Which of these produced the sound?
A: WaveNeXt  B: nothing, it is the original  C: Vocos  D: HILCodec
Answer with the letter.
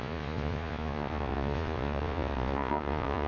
C